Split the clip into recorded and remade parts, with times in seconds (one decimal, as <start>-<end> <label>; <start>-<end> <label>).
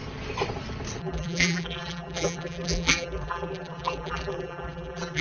0.0-1.0 recorded; 1.0-5.2 remade